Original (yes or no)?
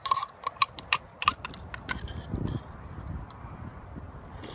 no